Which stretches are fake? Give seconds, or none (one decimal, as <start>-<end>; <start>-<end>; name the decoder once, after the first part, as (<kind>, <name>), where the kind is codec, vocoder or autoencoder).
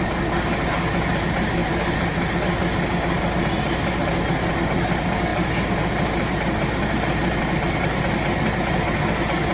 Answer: none